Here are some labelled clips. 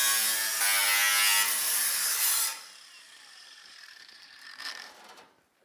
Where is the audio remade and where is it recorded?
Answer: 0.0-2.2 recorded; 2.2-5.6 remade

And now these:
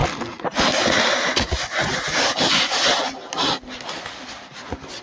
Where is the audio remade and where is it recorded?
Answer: 0.0-5.0 recorded

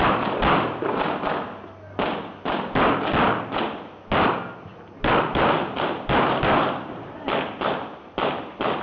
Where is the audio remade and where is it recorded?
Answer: 0.0-8.8 recorded